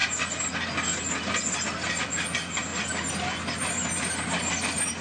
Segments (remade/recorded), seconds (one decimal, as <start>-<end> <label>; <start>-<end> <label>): 0.0-5.0 recorded

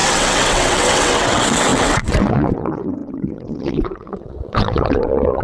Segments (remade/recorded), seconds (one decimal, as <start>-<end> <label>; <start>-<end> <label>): 0.0-5.4 remade

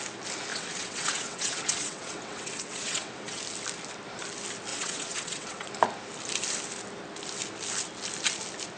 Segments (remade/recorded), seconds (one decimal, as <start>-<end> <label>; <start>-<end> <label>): 0.0-0.5 recorded; 0.5-3.4 remade; 3.4-4.7 recorded; 4.7-5.7 remade; 5.7-8.8 recorded

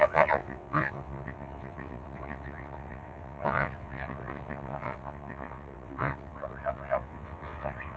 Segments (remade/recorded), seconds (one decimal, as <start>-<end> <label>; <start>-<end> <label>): 0.0-8.0 remade